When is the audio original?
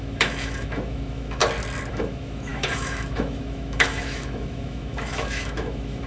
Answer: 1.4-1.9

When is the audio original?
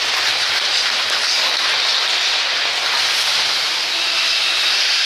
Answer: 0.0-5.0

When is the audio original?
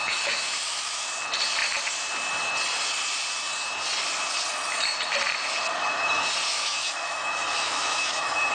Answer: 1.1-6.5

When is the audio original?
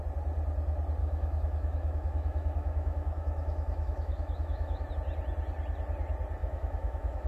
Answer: 0.0-1.0; 4.9-6.4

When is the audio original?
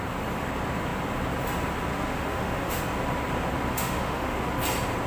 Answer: 0.0-1.9; 2.8-3.7; 4.5-5.1